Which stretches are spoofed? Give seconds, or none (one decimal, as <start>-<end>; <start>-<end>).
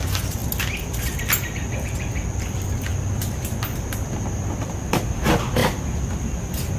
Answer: none